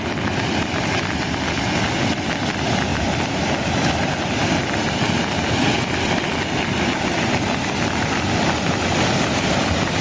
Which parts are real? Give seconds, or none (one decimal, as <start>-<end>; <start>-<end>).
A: 0.0-10.0